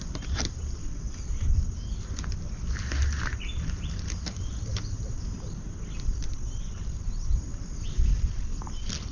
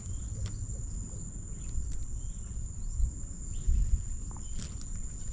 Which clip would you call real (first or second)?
second